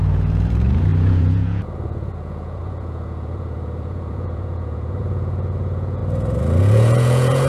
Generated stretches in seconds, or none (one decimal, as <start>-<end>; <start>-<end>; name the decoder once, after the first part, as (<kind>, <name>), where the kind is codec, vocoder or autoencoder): 0.0-6.0 (vocoder, Vocos); 6.6-7.5